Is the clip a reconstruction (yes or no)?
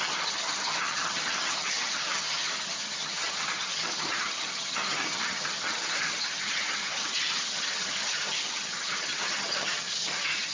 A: yes